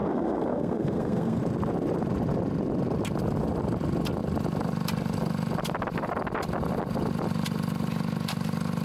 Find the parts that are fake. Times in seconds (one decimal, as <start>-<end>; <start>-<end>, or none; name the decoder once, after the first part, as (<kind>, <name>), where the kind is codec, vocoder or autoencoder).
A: 0.0-1.4 (codec, SNAC)